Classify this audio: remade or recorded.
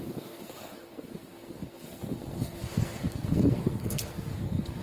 remade